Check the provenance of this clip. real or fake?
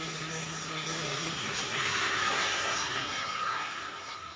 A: fake